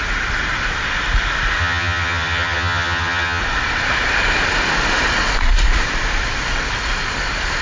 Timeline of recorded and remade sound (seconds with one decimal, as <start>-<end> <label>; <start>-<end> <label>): 0.0-1.6 recorded; 1.6-3.4 remade; 3.4-7.6 recorded

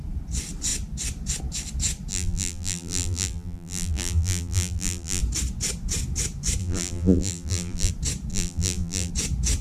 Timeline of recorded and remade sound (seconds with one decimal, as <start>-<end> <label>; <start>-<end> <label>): 0.0-2.1 recorded; 2.1-5.2 remade; 5.2-6.6 recorded; 6.6-7.9 remade; 7.9-8.3 recorded; 8.3-9.1 remade; 9.1-9.6 recorded

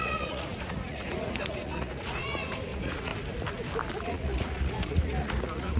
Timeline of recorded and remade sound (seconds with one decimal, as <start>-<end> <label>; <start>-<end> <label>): 0.0-3.1 remade; 3.1-4.0 recorded; 4.0-5.8 remade